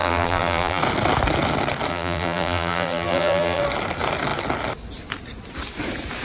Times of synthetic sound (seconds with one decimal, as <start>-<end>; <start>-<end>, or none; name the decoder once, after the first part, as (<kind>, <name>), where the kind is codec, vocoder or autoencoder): 0.0-0.8 (vocoder, BigVGAN v2); 1.9-3.6